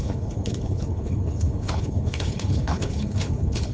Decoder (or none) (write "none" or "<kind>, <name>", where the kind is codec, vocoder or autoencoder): codec, HILCodec